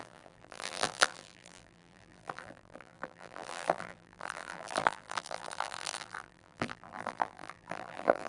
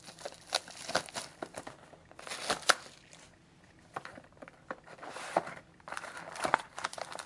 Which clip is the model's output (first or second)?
first